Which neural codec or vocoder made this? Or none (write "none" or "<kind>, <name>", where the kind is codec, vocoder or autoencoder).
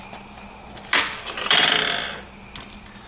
none